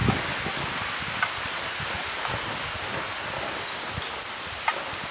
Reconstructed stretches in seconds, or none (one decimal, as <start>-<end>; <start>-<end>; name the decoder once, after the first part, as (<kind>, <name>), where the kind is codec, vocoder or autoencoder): none